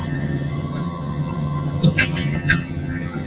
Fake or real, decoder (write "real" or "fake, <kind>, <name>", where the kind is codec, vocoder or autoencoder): fake, vocoder, HiFi-GAN